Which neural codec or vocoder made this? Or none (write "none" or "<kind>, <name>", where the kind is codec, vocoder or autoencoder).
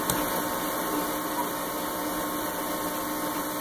none